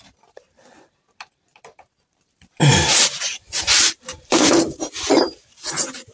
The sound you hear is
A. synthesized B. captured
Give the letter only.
A